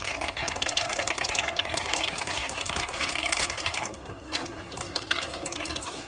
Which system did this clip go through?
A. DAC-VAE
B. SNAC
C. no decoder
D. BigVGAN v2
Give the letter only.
B